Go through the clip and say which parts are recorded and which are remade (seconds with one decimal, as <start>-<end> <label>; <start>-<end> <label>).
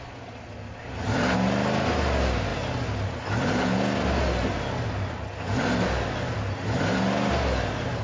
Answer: 0.0-8.0 recorded